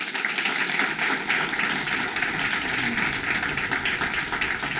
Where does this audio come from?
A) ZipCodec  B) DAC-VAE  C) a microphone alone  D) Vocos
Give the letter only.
C